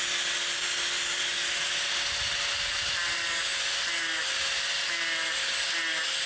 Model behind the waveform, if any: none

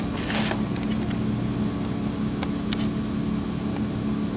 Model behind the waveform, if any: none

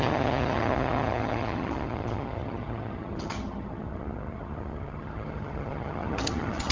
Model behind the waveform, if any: vocoder, HiFi-GAN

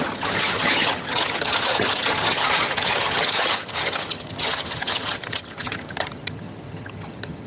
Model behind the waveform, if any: vocoder, HiFi-GAN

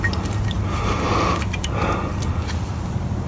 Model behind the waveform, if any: none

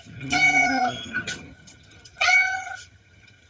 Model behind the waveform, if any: vocoder, HiFi-GAN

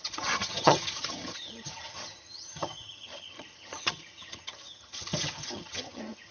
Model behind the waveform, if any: vocoder, HiFi-GAN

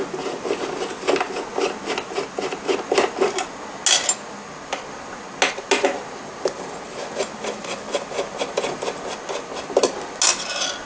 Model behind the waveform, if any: none